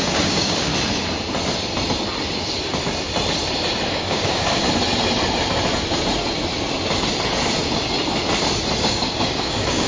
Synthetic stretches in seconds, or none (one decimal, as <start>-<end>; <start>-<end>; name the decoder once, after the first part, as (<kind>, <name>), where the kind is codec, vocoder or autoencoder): 0.0-0.7 (codec, DAC); 3.9-4.6; 8.8-9.9

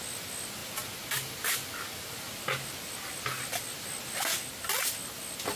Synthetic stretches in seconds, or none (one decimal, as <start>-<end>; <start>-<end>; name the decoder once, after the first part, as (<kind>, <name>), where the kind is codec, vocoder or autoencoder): none

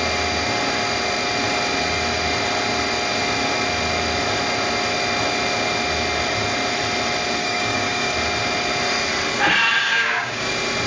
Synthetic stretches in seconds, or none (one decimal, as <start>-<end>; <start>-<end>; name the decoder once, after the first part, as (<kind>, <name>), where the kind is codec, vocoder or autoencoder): 7.4-8.1 (codec, DAC); 9.8-10.5

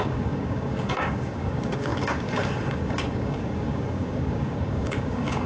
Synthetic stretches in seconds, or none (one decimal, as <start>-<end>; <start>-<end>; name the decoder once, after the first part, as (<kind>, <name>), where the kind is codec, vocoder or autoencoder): 0.0-5.5 (codec, DAC)